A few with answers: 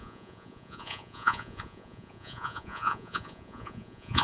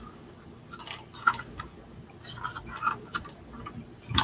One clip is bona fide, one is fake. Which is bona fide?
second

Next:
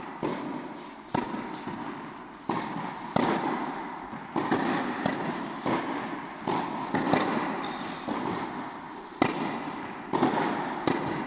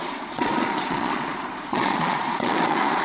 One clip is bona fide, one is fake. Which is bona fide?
first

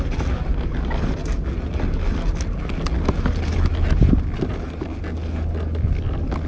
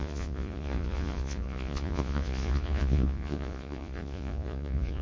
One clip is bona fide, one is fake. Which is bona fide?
first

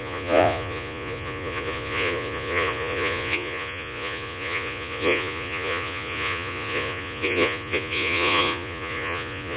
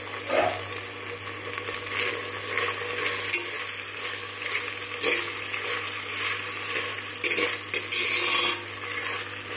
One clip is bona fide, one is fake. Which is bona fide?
second